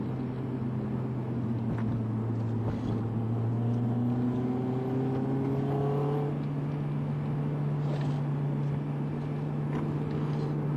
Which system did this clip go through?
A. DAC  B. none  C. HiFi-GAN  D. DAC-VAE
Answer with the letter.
B